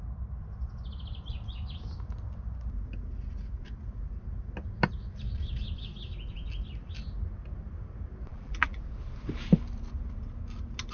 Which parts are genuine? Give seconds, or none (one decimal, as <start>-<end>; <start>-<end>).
0.0-8.3; 8.8-10.9